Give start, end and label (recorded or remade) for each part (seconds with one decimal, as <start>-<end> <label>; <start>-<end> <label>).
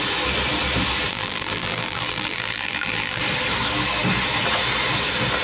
0.0-1.1 recorded; 1.1-3.2 remade; 3.2-5.4 recorded